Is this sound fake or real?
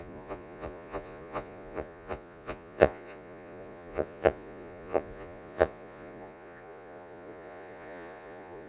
fake